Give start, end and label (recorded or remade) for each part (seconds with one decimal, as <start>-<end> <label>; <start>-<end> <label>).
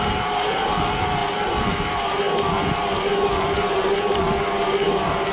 0.0-5.3 recorded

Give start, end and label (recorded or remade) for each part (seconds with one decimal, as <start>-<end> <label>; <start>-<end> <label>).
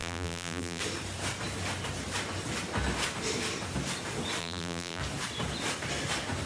0.0-0.8 remade; 0.8-4.4 recorded; 4.4-5.0 remade; 5.0-6.5 recorded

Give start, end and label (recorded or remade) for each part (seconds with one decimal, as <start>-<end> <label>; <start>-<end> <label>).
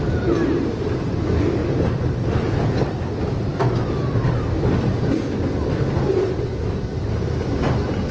0.0-1.6 recorded; 1.6-2.9 remade; 2.9-3.5 recorded; 3.5-4.7 remade; 4.7-8.1 recorded